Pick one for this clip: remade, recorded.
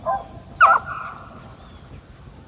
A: recorded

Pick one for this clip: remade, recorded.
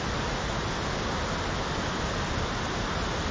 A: recorded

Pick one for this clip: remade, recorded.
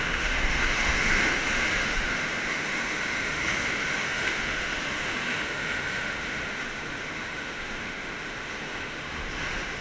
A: remade